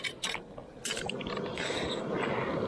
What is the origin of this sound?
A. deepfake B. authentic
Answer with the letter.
B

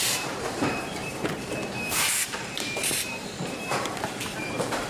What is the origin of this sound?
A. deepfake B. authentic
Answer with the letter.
A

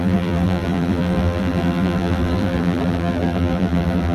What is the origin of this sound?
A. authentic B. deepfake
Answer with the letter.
B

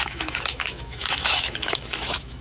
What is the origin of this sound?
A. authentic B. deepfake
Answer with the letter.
B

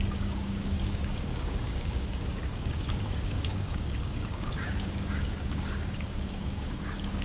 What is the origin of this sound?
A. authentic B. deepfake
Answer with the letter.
B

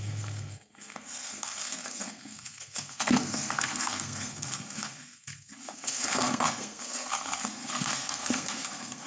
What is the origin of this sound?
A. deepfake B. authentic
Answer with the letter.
A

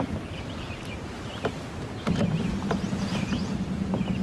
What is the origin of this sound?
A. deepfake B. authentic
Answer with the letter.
B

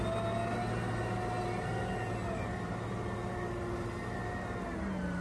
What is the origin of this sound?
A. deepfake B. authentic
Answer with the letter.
B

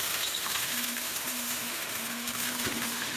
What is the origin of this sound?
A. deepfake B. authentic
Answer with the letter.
A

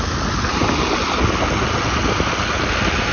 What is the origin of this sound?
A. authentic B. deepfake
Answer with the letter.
A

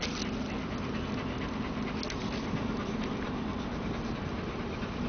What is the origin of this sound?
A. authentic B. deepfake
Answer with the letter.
A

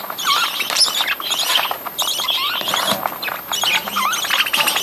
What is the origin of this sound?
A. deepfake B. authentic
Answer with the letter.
B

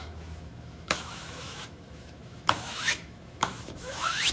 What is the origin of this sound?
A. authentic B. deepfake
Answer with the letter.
B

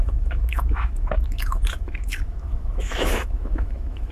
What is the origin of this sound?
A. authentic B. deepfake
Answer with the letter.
B